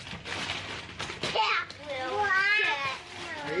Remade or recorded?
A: remade